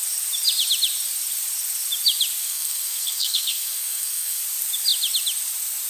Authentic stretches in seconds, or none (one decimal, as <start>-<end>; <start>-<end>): 0.0-2.4; 4.4-5.9